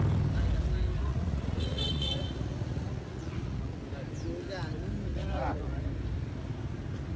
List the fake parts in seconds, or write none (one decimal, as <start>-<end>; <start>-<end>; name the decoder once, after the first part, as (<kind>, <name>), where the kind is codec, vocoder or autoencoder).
1.0-3.8 (vocoder, Vocos); 5.1-5.8